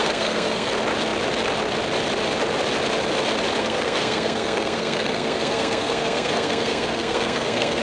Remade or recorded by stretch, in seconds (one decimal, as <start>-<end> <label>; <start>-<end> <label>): 0.0-0.7 remade; 0.7-3.6 recorded; 3.6-7.8 remade